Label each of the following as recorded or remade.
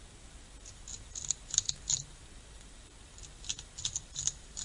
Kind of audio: recorded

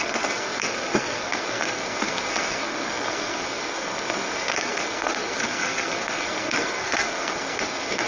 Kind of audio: remade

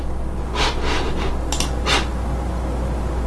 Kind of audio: recorded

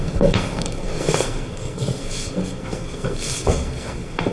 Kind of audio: remade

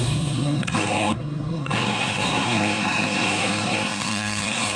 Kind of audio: remade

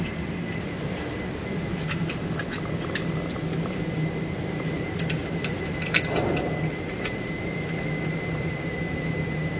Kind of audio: recorded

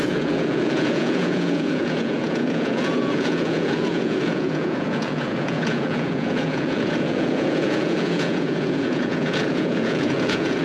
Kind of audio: remade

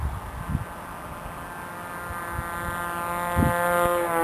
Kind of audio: recorded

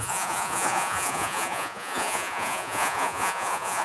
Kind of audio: remade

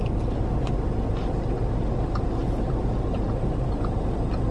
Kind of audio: recorded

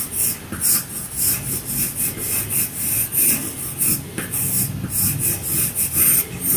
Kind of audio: recorded